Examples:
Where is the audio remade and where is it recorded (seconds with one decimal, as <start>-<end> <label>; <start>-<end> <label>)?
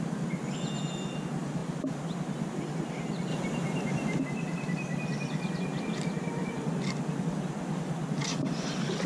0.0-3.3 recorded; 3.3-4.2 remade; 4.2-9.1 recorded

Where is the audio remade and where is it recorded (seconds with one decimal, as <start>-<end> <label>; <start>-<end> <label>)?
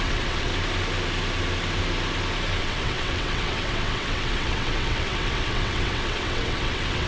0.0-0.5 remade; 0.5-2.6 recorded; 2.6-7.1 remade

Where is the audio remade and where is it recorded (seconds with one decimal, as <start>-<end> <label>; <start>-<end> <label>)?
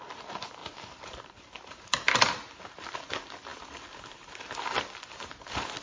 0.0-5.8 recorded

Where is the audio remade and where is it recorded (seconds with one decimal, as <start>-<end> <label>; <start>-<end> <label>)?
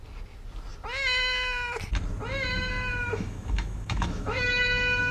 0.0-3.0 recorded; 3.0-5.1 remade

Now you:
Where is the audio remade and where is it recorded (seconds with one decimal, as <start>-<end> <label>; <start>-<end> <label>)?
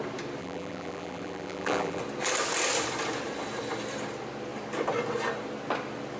0.0-0.4 recorded; 0.4-2.0 remade; 2.0-6.2 recorded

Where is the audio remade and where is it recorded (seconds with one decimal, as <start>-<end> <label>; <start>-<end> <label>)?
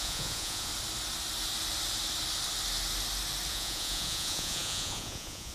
0.0-0.7 remade; 0.7-3.5 recorded; 3.5-5.5 remade